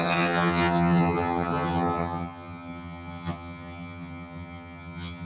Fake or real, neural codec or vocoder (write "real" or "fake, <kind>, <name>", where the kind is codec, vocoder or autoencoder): fake, vocoder, HiFi-GAN